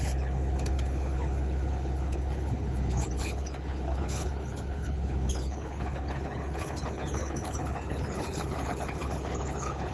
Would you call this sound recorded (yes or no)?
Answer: no